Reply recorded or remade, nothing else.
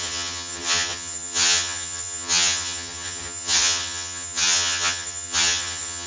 remade